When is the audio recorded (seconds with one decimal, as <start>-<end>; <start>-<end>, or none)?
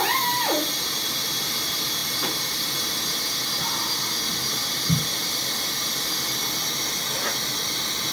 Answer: 0.0-2.0; 3.2-8.1